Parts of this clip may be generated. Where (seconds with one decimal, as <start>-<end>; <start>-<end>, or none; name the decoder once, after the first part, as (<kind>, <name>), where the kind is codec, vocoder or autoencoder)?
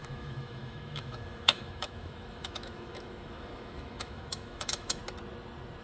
0.0-5.0 (autoencoder, DAC-VAE)